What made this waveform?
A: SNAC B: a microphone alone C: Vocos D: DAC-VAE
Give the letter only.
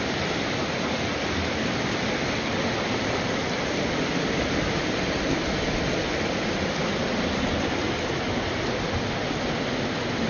B